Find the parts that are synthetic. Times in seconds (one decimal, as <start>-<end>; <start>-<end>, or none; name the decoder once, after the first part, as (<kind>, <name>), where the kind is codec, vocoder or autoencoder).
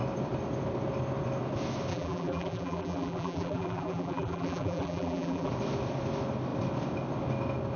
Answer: 1.9-5.5 (vocoder, BigVGAN v2)